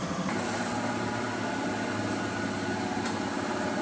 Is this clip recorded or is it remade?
remade